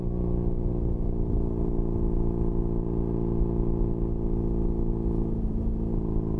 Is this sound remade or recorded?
recorded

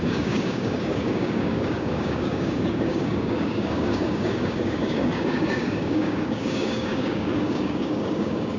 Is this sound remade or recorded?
remade